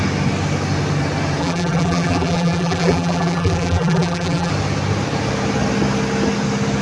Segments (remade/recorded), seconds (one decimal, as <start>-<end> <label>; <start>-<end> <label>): 0.0-1.4 recorded; 1.4-4.5 remade; 4.5-6.8 recorded